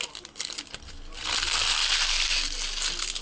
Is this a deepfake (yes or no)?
no